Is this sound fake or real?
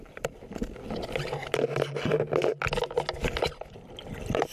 real